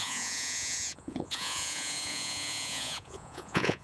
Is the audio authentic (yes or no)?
no